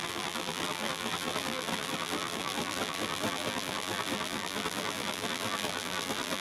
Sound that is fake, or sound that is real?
fake